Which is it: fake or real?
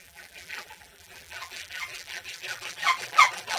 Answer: fake